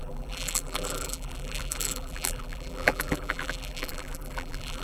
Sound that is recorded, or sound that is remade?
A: remade